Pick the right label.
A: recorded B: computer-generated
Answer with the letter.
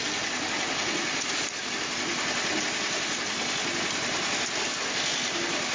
A